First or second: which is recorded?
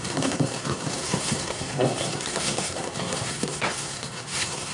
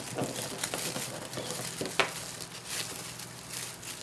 second